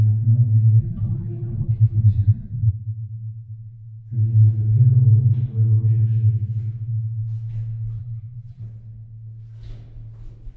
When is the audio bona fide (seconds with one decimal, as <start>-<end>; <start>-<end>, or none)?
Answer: 0.0-0.8; 2.7-8.0; 8.6-10.6

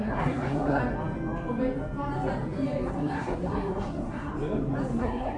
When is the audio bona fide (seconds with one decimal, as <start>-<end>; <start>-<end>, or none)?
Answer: 0.8-2.9; 4.3-5.0

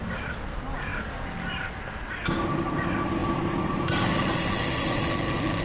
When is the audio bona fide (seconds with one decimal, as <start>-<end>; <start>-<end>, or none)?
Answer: 0.0-5.6